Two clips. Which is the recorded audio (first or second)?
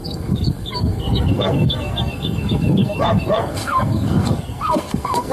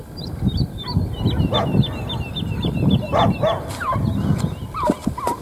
second